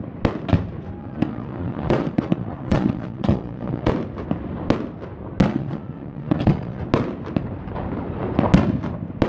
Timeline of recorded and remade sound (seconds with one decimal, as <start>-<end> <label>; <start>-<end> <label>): 0.0-1.0 recorded; 1.0-3.9 remade; 3.9-5.5 recorded; 5.5-6.8 remade; 6.8-9.3 recorded